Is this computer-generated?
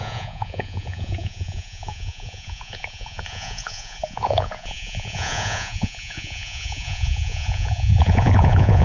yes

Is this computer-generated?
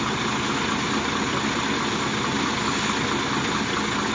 no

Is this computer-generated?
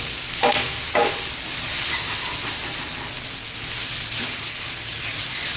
no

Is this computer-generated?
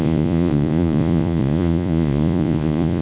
yes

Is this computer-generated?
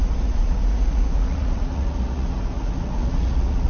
yes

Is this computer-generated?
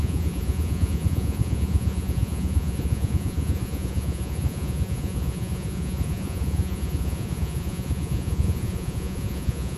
yes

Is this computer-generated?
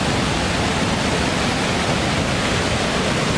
no